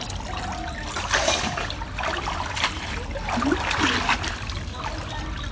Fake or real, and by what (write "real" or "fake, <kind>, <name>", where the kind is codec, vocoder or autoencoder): real